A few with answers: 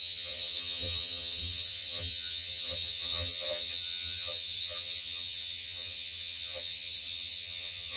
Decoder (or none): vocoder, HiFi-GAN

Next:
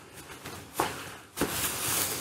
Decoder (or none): none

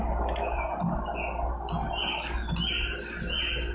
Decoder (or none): none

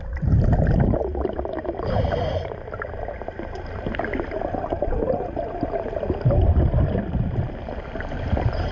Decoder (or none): none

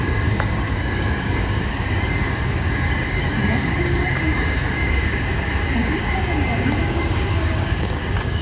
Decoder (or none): codec, DAC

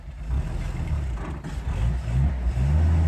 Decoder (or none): none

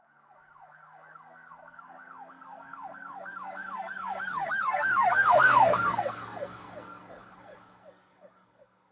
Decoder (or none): codec, SNAC